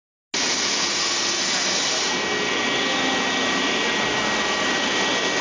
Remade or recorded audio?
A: recorded